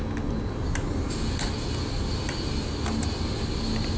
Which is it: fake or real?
real